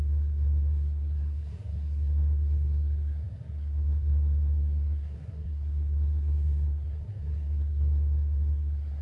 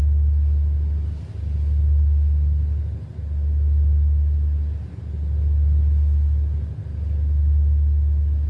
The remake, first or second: first